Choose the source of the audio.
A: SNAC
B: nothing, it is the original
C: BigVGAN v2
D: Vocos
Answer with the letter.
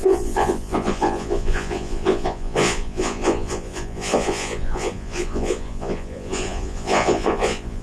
D